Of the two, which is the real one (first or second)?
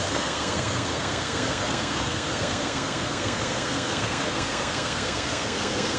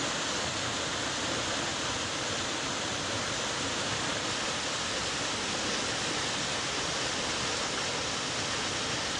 second